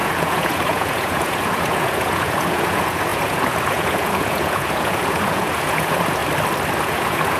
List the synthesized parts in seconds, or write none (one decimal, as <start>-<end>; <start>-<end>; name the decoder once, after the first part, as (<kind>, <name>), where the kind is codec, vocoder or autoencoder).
0.0-6.2 (vocoder, Vocos); 6.8-7.4